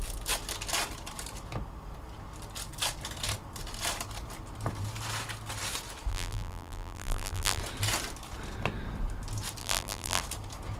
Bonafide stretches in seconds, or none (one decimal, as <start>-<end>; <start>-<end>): 0.0-6.1; 7.6-9.6; 10.2-10.8